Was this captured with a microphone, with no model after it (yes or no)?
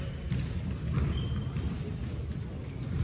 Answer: yes